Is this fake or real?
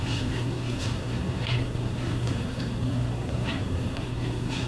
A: fake